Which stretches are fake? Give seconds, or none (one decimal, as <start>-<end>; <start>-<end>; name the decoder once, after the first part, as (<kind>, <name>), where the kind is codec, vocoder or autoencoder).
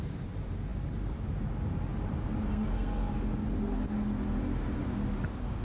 2.5-3.1 (codec, SNAC)